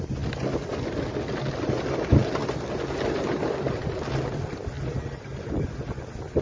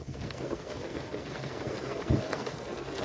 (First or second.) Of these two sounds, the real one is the first